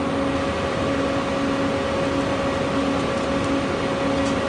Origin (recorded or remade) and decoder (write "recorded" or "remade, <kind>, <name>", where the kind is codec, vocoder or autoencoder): recorded